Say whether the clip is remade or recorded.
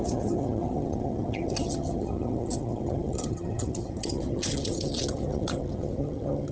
remade